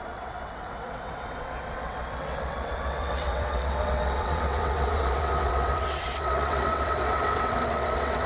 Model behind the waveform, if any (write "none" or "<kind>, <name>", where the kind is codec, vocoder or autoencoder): vocoder, WaveNeXt